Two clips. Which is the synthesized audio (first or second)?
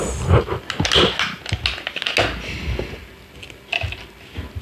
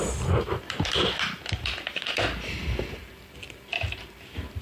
second